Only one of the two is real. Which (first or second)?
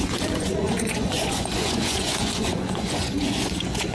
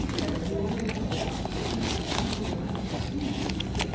second